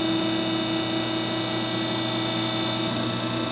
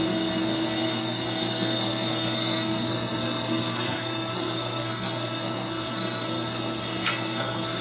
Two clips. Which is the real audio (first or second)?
first